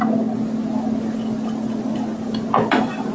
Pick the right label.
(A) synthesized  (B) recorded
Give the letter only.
B